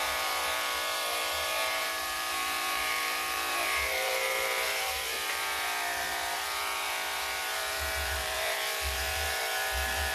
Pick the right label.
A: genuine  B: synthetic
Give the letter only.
B